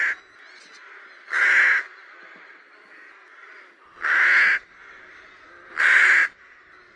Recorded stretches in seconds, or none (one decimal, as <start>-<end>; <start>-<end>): 0.0-7.0